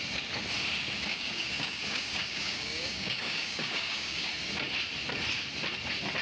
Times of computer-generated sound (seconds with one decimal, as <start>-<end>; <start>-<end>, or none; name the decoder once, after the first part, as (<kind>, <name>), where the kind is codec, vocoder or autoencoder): 1.1-4.3 (codec, DAC)